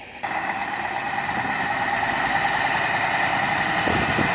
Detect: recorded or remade recorded